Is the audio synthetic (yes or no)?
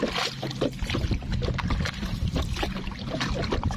no